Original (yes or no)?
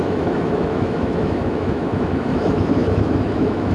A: no